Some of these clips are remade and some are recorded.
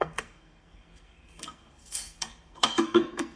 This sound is remade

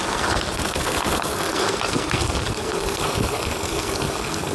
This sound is remade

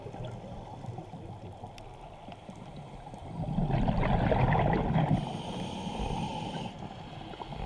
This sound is recorded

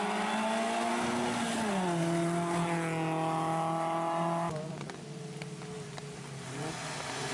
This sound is recorded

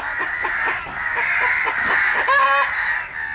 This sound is recorded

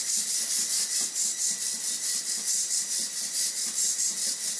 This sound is recorded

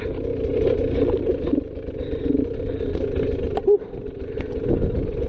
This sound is recorded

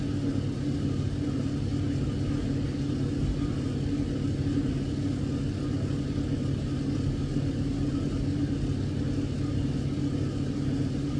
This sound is recorded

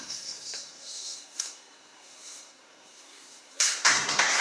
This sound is remade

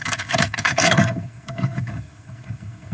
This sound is remade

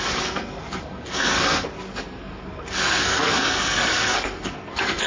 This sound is remade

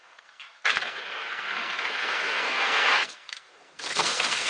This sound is remade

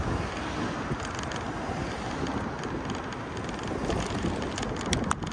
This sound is recorded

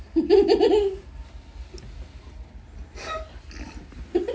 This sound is recorded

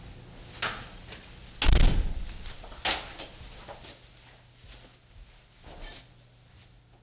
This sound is recorded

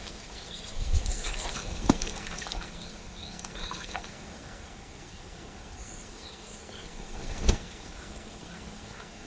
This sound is remade